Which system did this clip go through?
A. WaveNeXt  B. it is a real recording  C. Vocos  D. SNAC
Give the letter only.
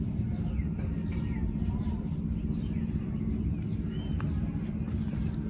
B